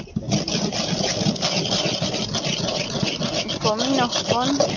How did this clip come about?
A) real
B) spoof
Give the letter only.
A